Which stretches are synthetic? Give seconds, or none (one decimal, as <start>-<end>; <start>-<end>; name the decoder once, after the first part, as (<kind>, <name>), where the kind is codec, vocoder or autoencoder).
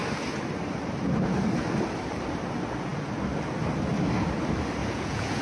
4.8-5.4 (vocoder, Vocos)